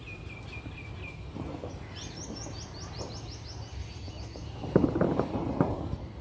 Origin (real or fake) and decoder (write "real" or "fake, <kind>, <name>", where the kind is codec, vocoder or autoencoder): real